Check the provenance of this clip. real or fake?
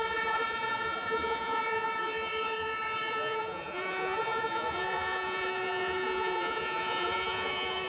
fake